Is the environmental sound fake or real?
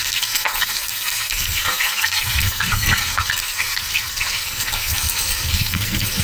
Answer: fake